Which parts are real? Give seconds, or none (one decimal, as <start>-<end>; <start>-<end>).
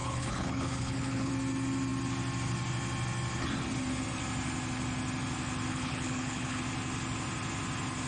1.3-5.7; 6.6-8.1